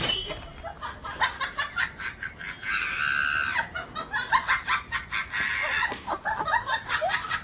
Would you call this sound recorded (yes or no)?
yes